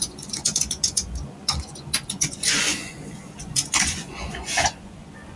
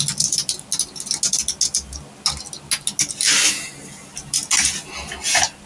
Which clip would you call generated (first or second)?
first